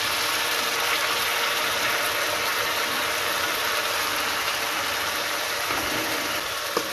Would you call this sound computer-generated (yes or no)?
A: no